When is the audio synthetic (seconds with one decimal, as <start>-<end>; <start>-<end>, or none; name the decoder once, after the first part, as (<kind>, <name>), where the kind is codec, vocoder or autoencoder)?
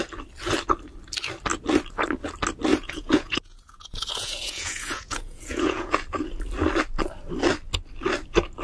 2.7-5.9 (vocoder, Vocos)